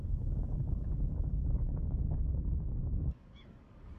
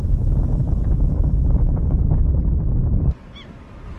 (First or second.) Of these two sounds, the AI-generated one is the first